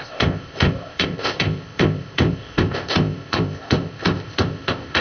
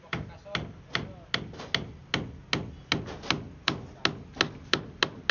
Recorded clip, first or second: second